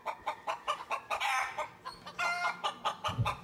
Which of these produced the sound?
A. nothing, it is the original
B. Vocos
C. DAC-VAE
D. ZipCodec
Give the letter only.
A